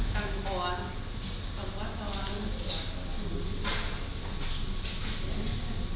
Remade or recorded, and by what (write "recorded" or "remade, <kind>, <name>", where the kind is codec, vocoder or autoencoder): recorded